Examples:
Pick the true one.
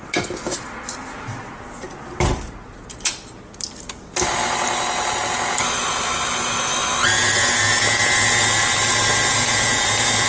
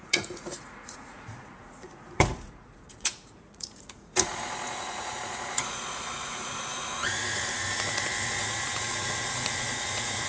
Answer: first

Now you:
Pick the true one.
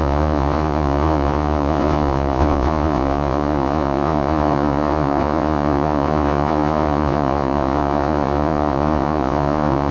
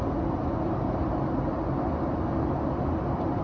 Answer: second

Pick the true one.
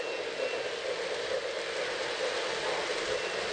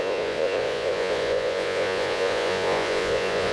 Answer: first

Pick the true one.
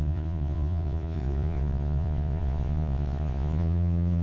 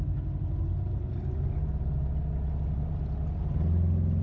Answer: second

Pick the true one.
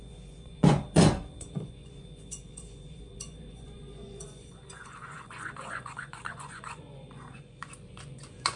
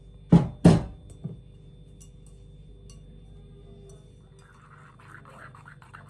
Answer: second